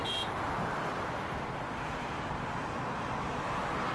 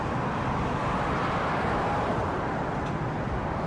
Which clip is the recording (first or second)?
first